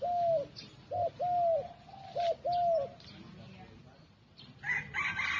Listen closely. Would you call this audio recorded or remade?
recorded